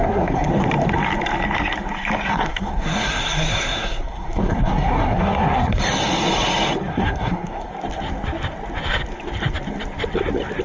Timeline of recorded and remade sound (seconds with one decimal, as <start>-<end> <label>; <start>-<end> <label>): 0.0-0.5 remade; 0.5-2.3 recorded; 2.3-5.8 remade; 5.8-6.9 recorded; 6.9-7.7 remade; 7.7-10.6 recorded